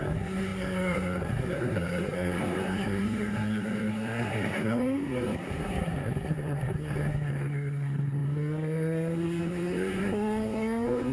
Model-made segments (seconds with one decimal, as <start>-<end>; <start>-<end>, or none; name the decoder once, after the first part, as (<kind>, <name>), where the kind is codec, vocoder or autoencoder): 0.0-11.1 (codec, SNAC)